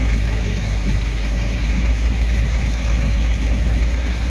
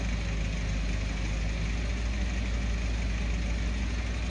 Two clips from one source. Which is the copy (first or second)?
first